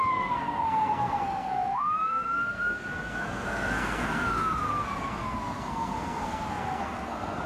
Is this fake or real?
fake